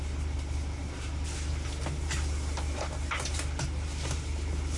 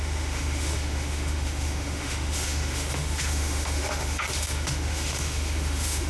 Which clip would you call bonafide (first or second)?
first